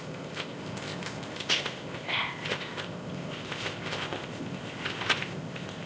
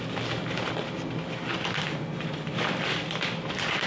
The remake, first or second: first